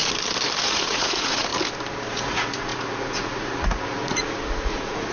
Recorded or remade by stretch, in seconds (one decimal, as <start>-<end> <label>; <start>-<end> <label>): 0.0-0.6 recorded; 0.6-1.5 remade; 1.5-2.1 recorded; 2.1-5.1 remade